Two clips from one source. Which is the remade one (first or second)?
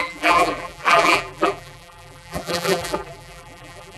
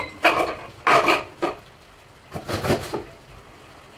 first